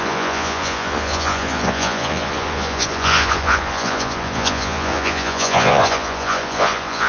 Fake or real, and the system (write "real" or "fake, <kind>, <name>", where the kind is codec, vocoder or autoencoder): fake, vocoder, Vocos